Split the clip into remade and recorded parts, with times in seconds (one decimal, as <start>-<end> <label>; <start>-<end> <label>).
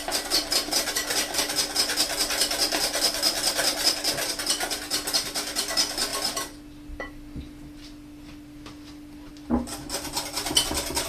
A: 0.0-11.1 recorded